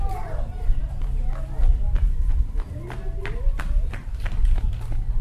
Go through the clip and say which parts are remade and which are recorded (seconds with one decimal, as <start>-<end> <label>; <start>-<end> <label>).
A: 0.0-5.2 recorded